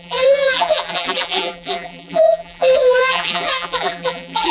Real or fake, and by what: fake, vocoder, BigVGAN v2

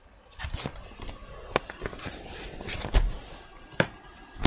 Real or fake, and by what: real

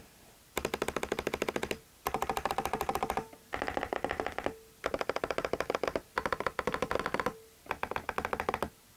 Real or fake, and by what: real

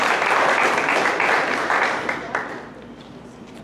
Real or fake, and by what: fake, vocoder, BigVGAN v2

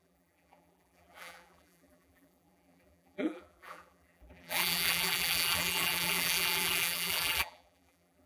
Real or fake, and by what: fake, vocoder, BigVGAN v2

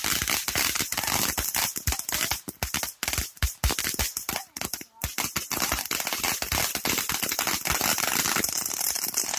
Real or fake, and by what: real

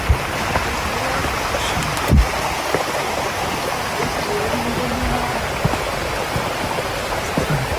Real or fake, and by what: real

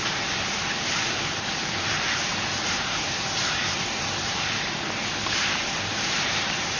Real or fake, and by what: fake, vocoder, BigVGAN v2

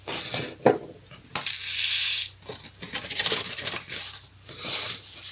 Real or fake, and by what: real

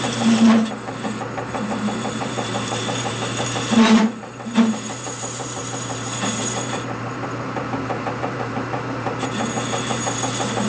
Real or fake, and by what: fake, vocoder, BigVGAN v2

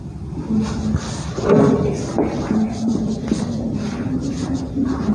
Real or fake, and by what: fake, vocoder, BigVGAN v2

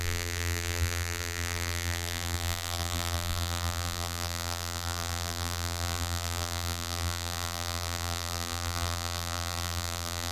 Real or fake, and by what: fake, vocoder, BigVGAN v2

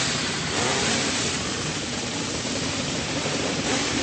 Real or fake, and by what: fake, vocoder, BigVGAN v2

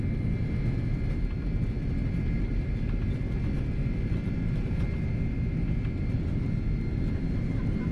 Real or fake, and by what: real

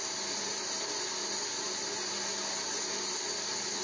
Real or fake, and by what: real